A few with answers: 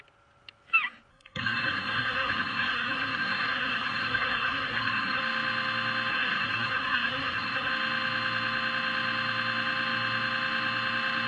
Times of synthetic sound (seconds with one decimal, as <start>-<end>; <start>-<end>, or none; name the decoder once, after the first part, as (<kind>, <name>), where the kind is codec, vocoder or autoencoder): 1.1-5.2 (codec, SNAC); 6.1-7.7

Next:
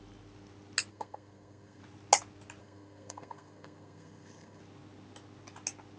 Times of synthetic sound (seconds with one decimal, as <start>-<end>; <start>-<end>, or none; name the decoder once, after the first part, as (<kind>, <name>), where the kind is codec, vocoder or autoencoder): 0.9-1.8 (codec, SNAC); 2.6-4.6

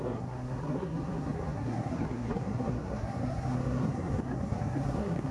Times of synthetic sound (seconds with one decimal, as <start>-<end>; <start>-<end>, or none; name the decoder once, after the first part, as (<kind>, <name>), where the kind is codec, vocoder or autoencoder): 0.0-5.3 (codec, SNAC)